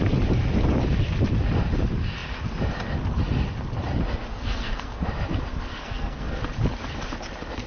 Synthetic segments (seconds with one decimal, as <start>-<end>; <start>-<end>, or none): 4.3-5.1; 5.7-6.4